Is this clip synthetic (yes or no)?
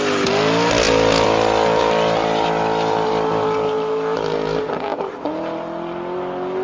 no